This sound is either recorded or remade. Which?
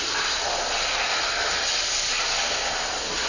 recorded